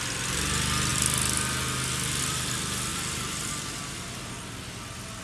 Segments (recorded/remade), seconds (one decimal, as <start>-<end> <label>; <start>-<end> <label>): 0.0-5.2 recorded